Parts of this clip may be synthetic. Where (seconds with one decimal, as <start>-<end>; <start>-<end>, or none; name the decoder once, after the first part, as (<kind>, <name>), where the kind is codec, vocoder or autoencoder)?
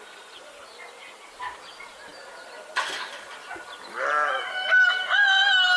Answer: none